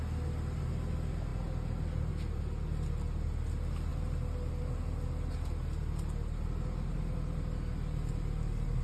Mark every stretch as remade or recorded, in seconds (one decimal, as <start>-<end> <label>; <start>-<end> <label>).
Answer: 0.0-8.8 recorded